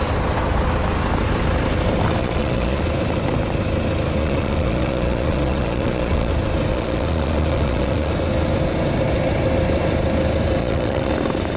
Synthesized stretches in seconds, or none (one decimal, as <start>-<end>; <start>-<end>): 2.2-2.8; 4.2-6.3; 6.7-8.1; 10.6-11.1